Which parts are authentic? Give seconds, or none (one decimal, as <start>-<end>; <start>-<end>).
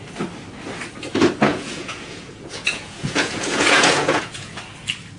0.0-1.5; 4.6-5.2